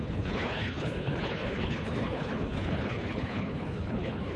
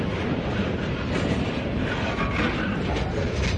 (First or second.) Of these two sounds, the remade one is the first